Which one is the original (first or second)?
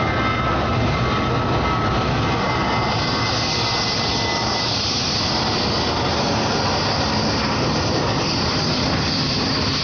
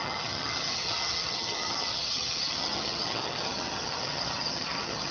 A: first